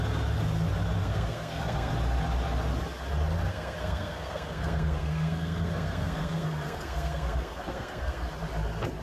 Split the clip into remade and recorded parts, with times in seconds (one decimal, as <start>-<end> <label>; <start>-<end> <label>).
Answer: 0.0-1.0 recorded; 1.0-1.9 remade; 1.9-3.5 recorded; 3.5-8.3 remade; 8.3-9.0 recorded